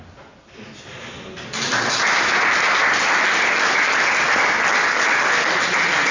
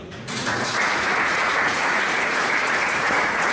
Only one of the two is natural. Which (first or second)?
first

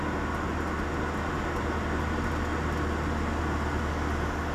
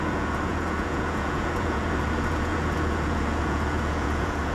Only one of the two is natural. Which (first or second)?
first